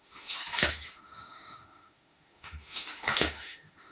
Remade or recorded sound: remade